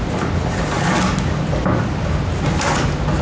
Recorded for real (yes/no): yes